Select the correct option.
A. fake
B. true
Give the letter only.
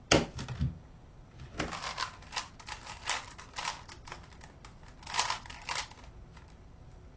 B